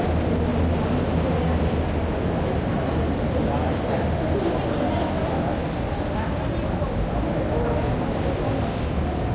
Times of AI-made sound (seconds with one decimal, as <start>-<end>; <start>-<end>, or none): none